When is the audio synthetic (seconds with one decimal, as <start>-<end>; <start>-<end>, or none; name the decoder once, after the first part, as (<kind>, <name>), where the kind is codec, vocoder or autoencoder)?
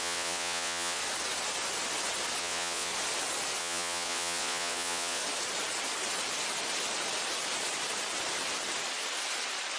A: 0.0-1.0 (vocoder, Vocos); 2.4-2.9; 3.6-5.2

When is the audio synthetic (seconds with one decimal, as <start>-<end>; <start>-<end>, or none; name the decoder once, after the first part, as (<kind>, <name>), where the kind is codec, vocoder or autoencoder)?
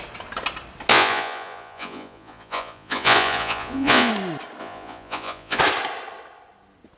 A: 0.9-4.1 (vocoder, Vocos); 4.6-5.6